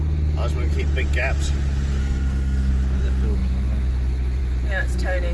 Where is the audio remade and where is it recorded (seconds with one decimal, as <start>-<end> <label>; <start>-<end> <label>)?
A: 0.0-2.0 recorded; 2.0-2.7 remade; 2.7-5.3 recorded